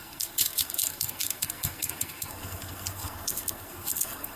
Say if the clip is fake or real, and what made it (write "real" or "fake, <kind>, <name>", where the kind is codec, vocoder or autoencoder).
fake, codec, SNAC